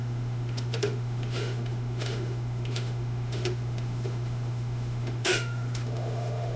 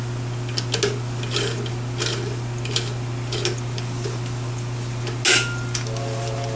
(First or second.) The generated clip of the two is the first